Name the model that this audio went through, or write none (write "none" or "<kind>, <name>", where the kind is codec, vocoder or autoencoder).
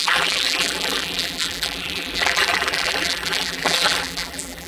vocoder, BigVGAN v2